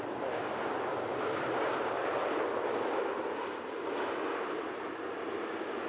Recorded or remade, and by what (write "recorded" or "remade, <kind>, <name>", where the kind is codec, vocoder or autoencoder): recorded